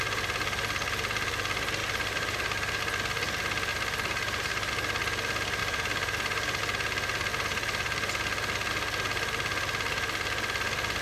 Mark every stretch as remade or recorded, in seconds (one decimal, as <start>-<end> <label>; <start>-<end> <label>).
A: 0.0-1.8 recorded; 1.8-2.8 remade; 2.8-3.7 recorded; 3.7-4.7 remade; 4.7-5.6 recorded; 5.6-6.6 remade; 6.6-11.0 recorded